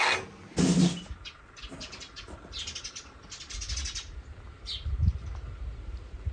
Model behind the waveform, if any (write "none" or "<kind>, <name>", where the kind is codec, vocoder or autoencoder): none